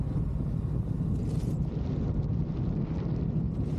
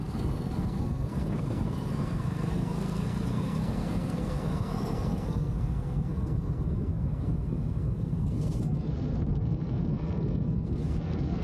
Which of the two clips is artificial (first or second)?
second